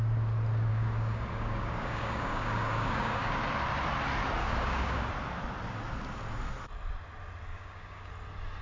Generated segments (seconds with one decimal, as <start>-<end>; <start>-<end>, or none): 0.7-3.4; 4.4-5.1; 7.5-8.1